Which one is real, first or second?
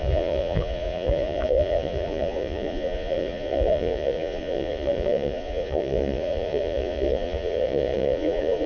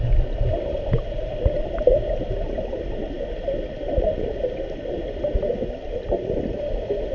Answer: second